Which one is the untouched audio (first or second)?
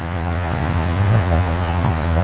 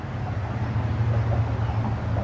second